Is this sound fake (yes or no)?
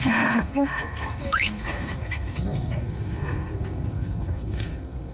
yes